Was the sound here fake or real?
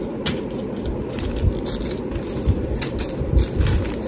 real